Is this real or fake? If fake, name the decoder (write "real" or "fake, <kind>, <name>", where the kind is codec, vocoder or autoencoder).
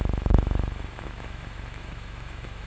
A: fake, autoencoder, DAC-VAE